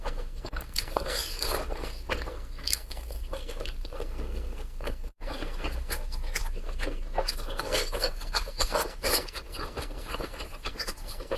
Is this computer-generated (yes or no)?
yes